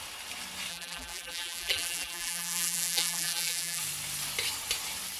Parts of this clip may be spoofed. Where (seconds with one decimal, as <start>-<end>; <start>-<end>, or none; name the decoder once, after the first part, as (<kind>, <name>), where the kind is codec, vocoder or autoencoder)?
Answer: 0.7-3.8 (vocoder, BigVGAN v2)